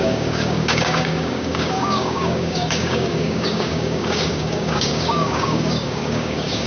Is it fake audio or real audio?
fake